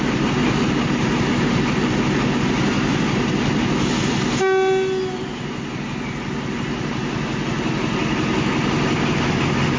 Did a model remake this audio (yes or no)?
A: no